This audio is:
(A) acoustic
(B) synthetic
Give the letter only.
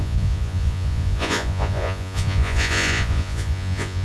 B